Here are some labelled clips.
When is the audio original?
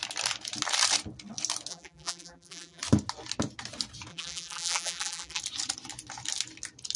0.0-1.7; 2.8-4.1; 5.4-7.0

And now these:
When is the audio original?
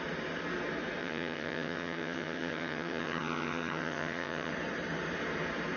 0.0-1.0; 4.5-5.8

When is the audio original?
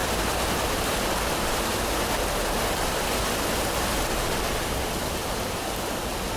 0.0-0.7; 1.7-3.5; 3.9-5.0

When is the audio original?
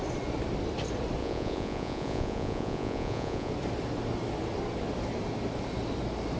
0.0-1.2; 3.5-6.4